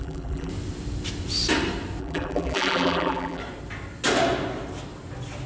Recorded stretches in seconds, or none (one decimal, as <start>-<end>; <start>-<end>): 0.5-2.0; 3.4-5.5